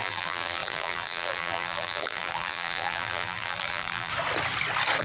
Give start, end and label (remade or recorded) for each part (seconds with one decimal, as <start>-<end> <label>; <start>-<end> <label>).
0.0-4.1 remade; 4.1-5.0 recorded